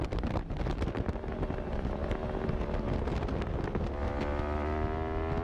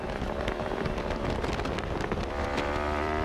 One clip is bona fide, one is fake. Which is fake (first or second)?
second